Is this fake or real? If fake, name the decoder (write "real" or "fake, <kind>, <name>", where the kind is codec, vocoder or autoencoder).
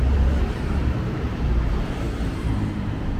fake, vocoder, BigVGAN v2